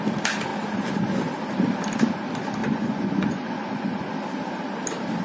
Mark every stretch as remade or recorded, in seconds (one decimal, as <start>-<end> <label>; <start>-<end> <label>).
0.0-2.6 recorded; 2.6-4.1 remade; 4.1-5.2 recorded

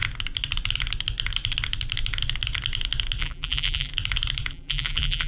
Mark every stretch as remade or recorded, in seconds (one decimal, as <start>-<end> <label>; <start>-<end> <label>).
0.0-3.2 recorded; 3.2-3.9 remade; 3.9-4.5 recorded; 4.5-5.3 remade

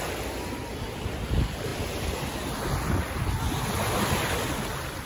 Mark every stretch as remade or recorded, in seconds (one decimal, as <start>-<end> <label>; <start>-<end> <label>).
0.0-5.1 recorded

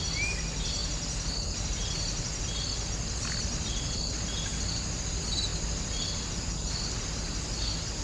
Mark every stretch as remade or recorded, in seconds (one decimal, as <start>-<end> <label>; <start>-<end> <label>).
0.0-8.0 recorded

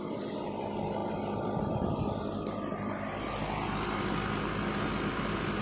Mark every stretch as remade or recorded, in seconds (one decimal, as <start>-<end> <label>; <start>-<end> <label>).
0.0-5.6 recorded

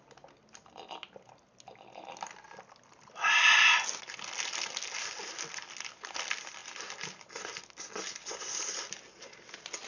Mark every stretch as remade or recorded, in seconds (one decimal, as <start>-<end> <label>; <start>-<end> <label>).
0.0-9.9 recorded